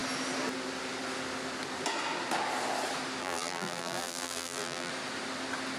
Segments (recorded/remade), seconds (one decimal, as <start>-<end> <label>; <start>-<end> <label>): 0.0-3.2 recorded; 3.2-4.9 remade; 4.9-5.8 recorded

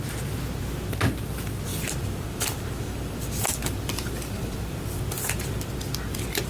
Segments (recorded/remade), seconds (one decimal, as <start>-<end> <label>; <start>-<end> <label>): 0.0-1.7 recorded; 1.7-5.6 remade; 5.6-6.5 recorded

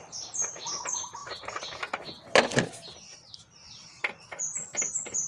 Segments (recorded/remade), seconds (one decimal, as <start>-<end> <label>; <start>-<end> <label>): 0.0-5.3 recorded

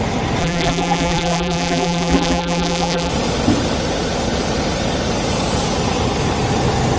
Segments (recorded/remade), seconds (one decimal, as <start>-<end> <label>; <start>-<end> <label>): 0.0-0.4 recorded; 0.4-3.1 remade; 3.1-7.0 recorded

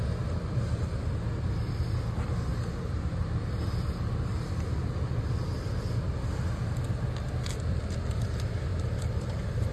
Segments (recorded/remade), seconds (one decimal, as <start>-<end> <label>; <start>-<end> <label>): 0.0-2.5 recorded; 2.5-4.5 remade; 4.5-8.7 recorded; 8.7-9.7 remade

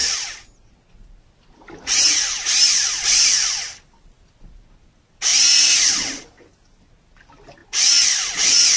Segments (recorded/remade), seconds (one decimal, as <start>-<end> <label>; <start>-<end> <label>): 0.0-5.3 recorded; 5.3-5.9 remade; 5.9-8.8 recorded

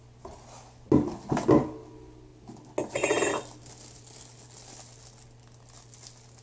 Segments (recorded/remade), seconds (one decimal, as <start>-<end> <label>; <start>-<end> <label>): 0.0-6.4 recorded

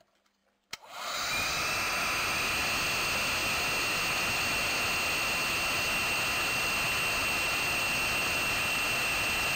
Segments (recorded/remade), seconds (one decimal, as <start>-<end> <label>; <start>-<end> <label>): 0.0-9.6 recorded